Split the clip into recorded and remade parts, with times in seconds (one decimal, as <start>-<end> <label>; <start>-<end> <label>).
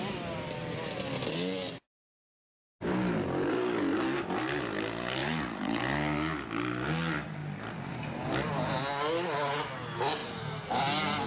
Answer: 0.0-5.2 recorded; 5.2-5.8 remade; 5.8-11.3 recorded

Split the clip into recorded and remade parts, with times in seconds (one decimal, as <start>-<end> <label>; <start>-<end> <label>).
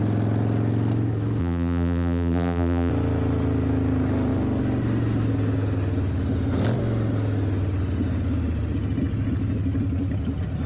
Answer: 0.0-1.4 recorded; 1.4-2.9 remade; 2.9-10.7 recorded